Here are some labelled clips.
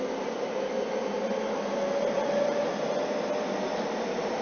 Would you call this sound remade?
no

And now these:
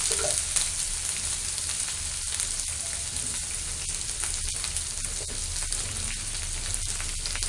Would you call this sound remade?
no